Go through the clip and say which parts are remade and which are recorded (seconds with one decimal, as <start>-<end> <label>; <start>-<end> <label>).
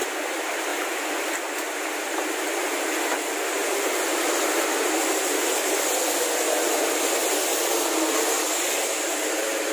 0.0-9.7 recorded